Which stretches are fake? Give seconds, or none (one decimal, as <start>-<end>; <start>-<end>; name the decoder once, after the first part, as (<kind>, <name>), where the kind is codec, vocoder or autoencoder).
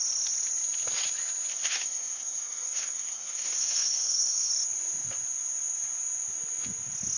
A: 1.5-4.5 (codec, SNAC)